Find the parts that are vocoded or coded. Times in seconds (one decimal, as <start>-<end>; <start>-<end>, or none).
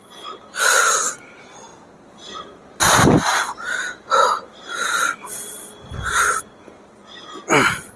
1.7-6.5